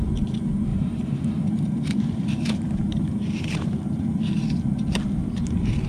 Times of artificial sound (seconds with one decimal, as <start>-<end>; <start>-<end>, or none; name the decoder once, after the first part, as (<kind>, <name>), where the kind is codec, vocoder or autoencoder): 0.7-4.0 (vocoder, BigVGAN v2)